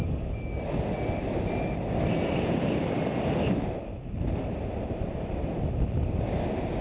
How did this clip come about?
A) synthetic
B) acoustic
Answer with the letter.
B